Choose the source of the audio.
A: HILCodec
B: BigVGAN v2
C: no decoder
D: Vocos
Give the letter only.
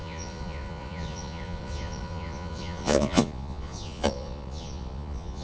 D